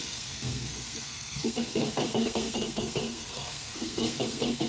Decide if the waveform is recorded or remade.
remade